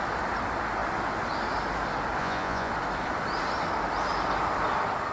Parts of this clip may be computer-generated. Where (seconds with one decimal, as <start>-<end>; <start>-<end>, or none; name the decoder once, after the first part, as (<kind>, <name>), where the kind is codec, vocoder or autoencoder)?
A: 2.2-2.7 (vocoder, Vocos)